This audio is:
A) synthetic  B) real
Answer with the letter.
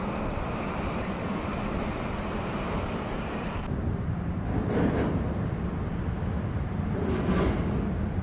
B